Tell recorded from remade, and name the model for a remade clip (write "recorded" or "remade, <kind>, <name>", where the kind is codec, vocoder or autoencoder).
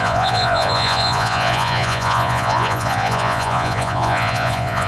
remade, vocoder, Vocos